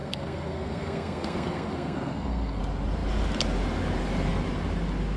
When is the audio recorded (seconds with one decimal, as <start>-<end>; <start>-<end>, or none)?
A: 2.6-5.2